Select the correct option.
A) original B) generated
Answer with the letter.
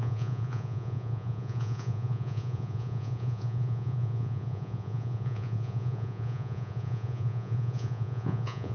B